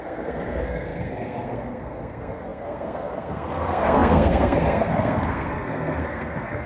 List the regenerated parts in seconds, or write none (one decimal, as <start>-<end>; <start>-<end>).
0.0-6.7